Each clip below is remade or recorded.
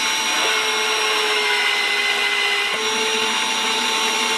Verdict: recorded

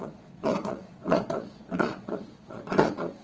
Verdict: remade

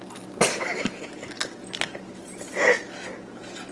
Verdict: recorded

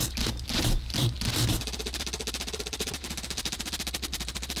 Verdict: recorded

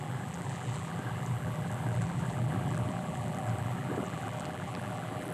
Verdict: remade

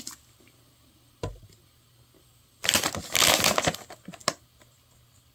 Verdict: recorded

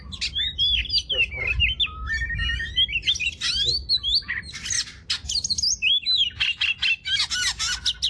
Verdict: recorded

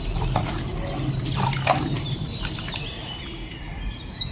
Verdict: recorded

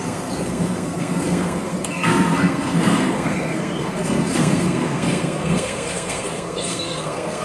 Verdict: remade